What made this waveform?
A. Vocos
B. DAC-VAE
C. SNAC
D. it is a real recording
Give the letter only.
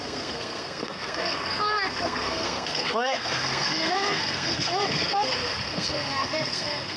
C